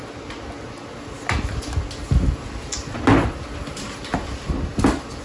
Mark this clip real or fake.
real